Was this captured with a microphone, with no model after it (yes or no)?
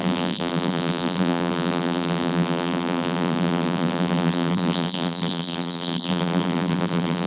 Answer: no